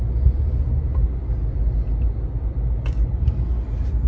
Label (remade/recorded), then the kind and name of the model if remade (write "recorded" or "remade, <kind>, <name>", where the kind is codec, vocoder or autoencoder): recorded